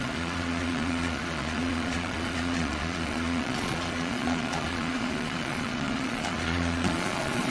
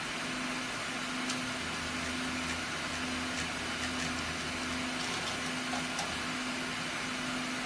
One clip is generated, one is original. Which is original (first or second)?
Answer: second